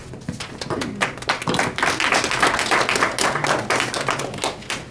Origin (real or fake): real